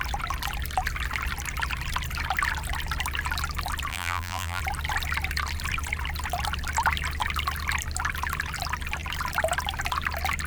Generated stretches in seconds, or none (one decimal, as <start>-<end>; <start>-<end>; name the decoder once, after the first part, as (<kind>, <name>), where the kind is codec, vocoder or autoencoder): 3.9-4.6 (vocoder, BigVGAN v2)